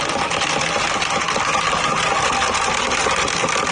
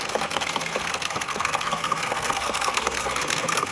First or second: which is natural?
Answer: first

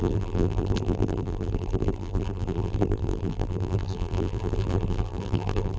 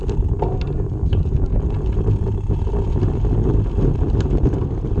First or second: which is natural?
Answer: second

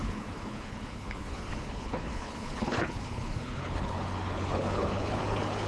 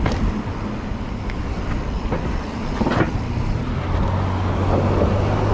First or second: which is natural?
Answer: second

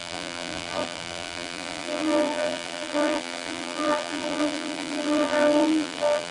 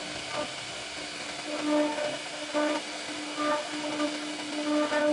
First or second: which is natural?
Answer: second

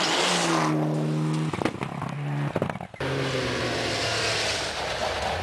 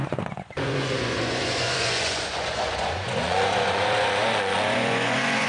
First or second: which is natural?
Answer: first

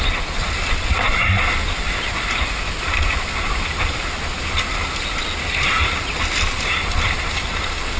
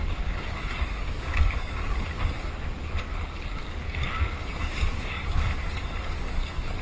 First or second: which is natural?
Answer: first